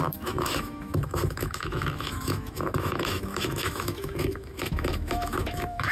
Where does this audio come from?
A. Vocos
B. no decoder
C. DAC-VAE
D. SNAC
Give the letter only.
C